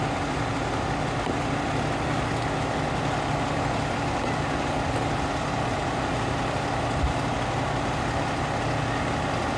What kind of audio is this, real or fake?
real